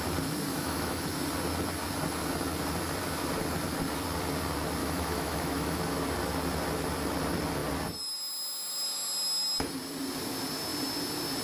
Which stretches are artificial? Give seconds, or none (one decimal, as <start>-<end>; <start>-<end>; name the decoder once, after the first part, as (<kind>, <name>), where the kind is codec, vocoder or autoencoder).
0.5-1.2 (autoencoder, DAC-VAE); 4.8-5.8